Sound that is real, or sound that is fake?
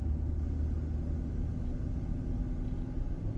real